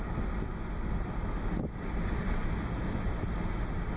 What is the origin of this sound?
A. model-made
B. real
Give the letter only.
B